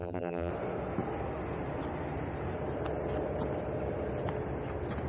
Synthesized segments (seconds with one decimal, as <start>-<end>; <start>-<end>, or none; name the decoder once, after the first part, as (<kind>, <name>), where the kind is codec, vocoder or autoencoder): 0.0-0.5 (vocoder, BigVGAN v2)